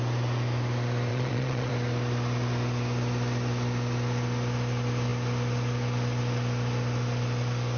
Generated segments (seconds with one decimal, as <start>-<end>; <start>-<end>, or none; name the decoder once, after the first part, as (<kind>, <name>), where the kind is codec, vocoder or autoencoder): 1.1-1.7 (vocoder, Vocos)

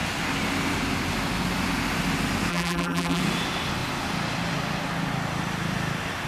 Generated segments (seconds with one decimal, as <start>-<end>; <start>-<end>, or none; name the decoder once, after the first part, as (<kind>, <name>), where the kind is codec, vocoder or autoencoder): 2.5-3.2 (vocoder, BigVGAN v2)

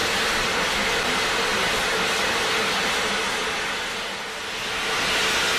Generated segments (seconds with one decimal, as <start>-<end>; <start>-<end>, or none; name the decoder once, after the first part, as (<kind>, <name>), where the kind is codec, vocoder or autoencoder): none